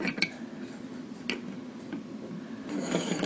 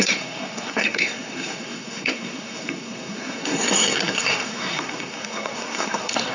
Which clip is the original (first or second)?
first